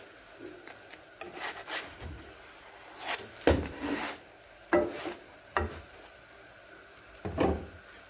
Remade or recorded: recorded